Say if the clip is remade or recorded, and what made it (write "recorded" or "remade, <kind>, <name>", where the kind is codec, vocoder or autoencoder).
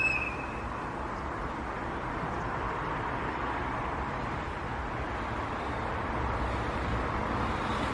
recorded